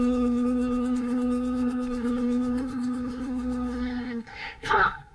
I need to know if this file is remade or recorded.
remade